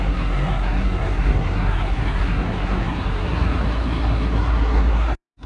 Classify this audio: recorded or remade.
remade